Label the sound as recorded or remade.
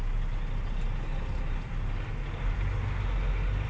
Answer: recorded